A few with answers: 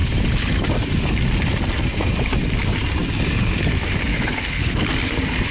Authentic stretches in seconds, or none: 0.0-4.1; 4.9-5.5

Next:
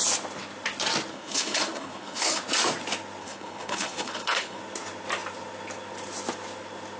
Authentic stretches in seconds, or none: 0.0-1.1; 2.4-3.2; 4.6-7.0

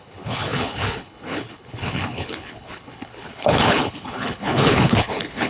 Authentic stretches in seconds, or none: none

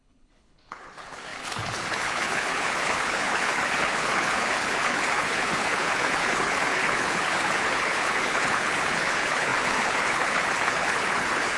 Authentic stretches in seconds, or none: none

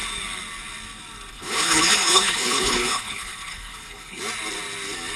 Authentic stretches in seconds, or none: 0.0-1.3; 4.2-5.2